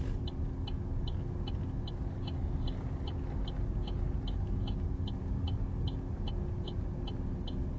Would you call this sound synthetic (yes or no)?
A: no